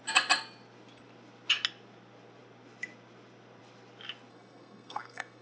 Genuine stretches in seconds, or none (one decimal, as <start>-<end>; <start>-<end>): 0.0-4.3